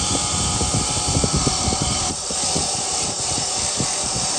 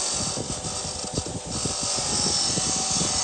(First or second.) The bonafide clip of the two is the second